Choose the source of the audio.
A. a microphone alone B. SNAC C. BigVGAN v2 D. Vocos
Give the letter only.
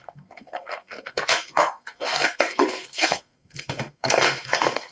B